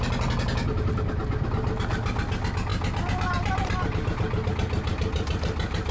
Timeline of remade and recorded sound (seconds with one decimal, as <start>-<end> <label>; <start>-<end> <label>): 0.0-5.9 recorded